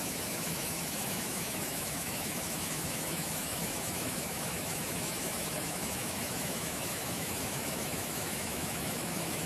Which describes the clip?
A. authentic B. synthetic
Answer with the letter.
B